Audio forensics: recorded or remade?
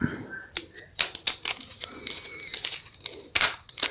recorded